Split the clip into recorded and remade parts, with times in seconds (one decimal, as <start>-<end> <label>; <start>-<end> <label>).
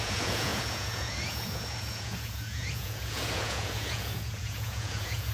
0.0-5.3 remade